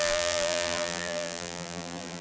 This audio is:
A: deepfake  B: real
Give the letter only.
A